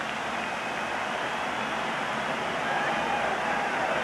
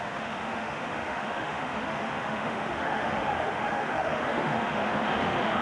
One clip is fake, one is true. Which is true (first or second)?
first